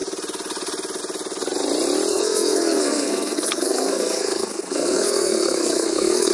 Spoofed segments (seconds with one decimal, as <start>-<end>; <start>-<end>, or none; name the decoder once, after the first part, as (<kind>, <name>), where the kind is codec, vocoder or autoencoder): 2.1-6.3 (codec, SNAC)